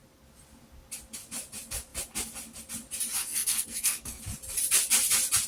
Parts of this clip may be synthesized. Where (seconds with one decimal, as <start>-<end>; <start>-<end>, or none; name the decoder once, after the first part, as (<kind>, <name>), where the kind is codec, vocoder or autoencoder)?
3.2-4.2 (codec, SNAC)